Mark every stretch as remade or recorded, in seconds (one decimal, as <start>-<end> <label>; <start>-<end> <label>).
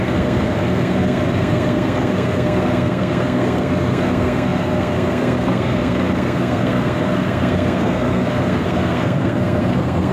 0.0-10.1 remade